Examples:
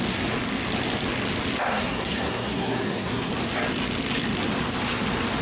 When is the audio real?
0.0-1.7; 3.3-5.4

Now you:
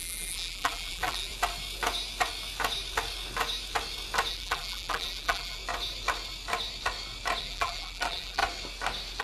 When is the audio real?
1.3-4.3; 5.6-7.4; 8.4-9.2

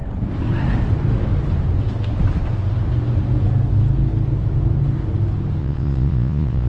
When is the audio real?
0.0-5.6

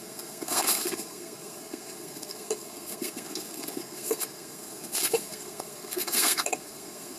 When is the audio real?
none

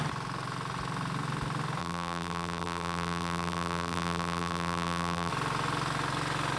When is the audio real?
0.0-1.8; 5.3-6.6

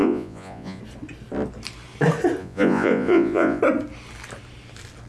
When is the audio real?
0.8-2.4; 3.6-5.1